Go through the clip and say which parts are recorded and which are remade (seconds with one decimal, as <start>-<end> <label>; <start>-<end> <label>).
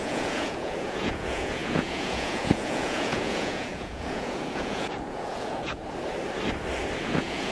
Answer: 0.0-5.8 remade; 5.8-7.0 recorded; 7.0-7.5 remade